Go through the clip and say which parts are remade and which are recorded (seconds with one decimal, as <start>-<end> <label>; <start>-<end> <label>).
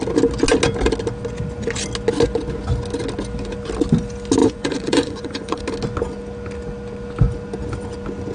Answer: 0.0-4.4 recorded; 4.4-5.6 remade; 5.6-8.3 recorded